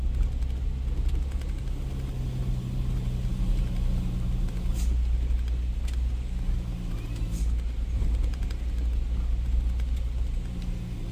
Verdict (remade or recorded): recorded